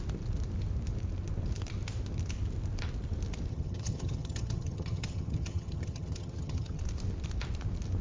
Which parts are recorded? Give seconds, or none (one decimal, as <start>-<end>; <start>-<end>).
0.0-3.5; 6.8-8.0